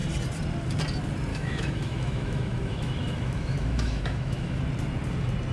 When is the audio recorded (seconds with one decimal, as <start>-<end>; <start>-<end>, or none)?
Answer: 0.0-1.3; 4.6-5.5